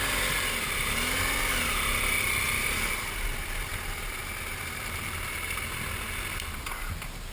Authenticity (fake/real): real